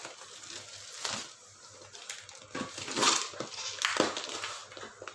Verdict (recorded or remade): recorded